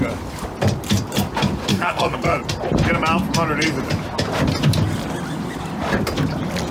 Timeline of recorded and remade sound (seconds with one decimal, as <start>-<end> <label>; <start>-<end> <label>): 0.0-1.7 recorded; 1.7-2.4 remade; 2.4-6.7 recorded